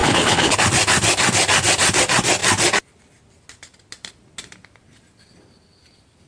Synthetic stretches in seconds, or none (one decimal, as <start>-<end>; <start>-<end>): 0.0-0.6